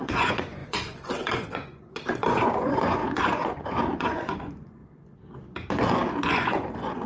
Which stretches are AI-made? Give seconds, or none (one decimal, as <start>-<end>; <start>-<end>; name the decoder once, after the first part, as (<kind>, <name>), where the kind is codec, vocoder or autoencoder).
0.0-4.8 (vocoder, Vocos); 6.3-7.1